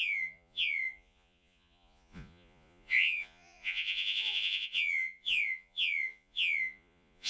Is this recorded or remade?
remade